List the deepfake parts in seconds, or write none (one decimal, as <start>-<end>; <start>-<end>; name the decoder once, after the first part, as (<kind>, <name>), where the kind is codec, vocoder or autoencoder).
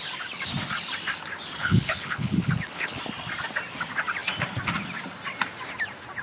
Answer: 1.6-3.0 (codec, HILCodec)